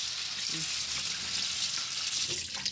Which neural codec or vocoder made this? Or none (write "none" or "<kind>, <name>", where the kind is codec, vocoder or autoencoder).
none